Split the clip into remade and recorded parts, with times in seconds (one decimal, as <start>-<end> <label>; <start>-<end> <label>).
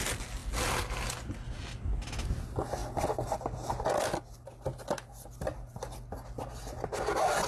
0.0-7.5 recorded